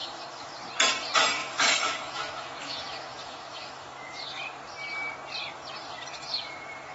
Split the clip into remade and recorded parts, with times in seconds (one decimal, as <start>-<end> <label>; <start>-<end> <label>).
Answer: 0.0-0.6 remade; 0.6-1.4 recorded; 1.4-4.4 remade; 4.4-6.9 recorded